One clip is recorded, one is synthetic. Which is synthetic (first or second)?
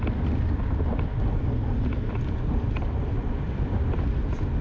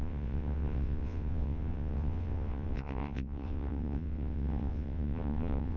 second